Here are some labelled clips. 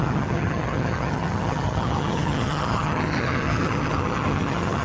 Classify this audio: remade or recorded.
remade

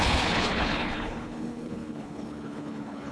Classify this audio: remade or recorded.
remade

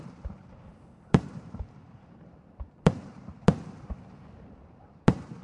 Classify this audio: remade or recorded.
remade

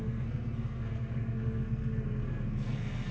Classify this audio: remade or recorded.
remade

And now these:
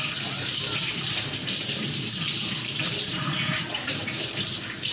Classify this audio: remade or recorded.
remade